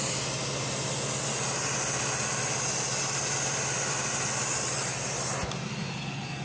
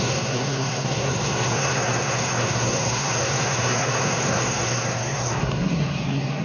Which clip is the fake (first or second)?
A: second